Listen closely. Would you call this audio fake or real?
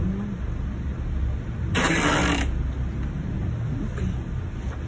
real